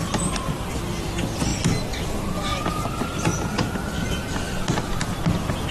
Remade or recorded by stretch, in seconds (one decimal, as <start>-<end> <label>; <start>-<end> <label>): 0.0-5.7 recorded